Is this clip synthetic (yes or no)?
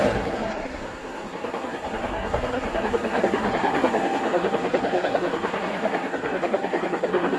yes